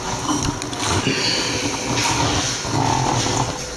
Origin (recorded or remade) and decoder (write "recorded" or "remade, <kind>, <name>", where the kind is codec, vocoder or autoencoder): recorded